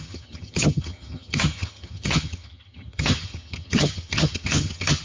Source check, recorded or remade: remade